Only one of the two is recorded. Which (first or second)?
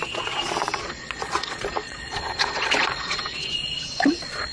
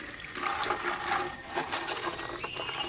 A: second